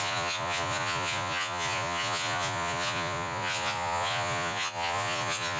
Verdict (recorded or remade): remade